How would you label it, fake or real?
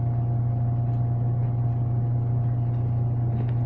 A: real